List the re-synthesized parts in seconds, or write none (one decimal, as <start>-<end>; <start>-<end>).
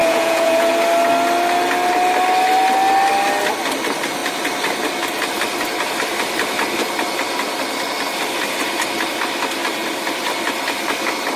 0.0-0.7